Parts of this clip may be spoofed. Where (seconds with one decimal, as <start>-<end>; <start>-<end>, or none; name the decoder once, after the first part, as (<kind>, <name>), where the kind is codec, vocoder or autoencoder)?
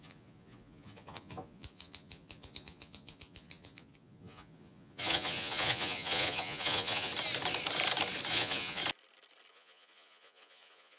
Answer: 0.0-7.1 (vocoder, Vocos); 8.3-8.8; 9.5-11.0